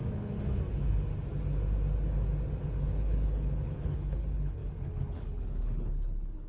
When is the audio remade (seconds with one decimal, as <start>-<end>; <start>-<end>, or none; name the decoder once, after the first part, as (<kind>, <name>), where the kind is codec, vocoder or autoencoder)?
2.8-6.5 (codec, HILCodec)